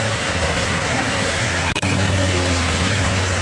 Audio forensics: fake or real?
fake